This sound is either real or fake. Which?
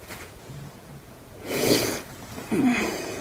fake